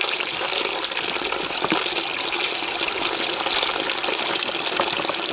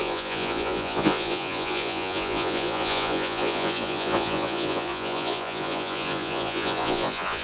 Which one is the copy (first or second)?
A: second